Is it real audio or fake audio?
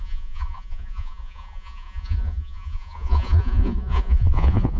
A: fake